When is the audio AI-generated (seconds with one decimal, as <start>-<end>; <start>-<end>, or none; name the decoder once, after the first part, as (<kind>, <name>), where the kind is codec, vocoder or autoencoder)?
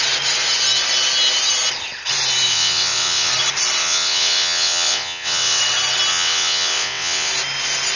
2.5-3.3 (vocoder, WaveNeXt); 3.8-5.6; 6.1-7.3